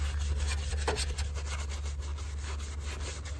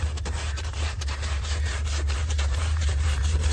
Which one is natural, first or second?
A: first